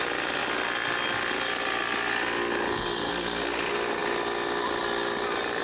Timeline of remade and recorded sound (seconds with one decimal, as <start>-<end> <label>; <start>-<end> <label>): 0.0-5.6 recorded